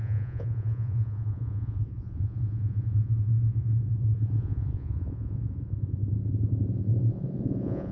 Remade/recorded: remade